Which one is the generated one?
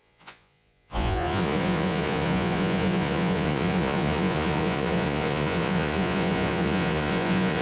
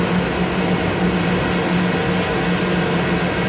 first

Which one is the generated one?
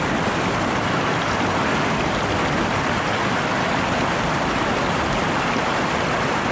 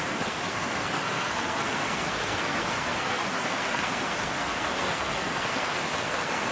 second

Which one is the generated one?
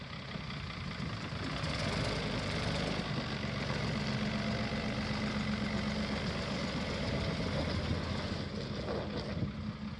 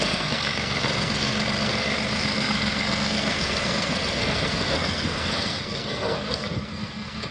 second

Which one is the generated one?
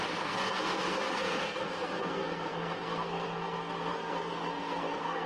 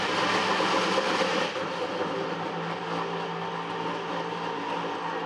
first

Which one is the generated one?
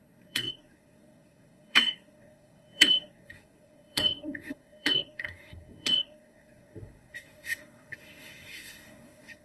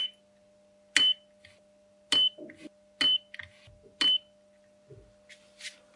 first